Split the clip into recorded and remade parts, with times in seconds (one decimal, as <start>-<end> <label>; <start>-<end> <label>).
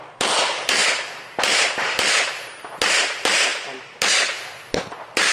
0.0-5.3 recorded